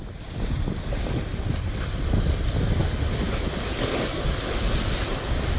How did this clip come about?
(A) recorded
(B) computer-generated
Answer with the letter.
B